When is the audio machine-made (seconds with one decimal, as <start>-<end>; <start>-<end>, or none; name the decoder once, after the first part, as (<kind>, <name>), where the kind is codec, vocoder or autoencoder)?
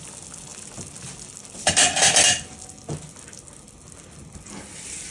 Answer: none